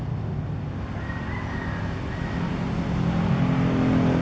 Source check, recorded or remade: recorded